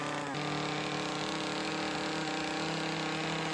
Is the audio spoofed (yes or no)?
no